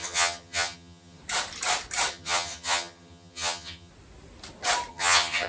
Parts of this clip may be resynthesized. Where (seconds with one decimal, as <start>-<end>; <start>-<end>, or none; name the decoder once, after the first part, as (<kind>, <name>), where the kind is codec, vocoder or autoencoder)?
0.0-1.2 (vocoder, HiFi-GAN); 2.1-3.9; 4.9-5.5